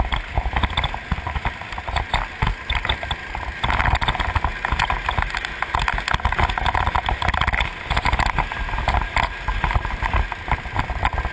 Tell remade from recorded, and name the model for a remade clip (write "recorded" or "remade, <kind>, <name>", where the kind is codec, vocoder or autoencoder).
recorded